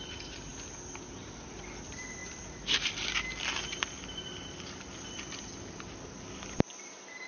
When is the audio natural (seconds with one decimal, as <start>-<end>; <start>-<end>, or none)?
0.0-7.3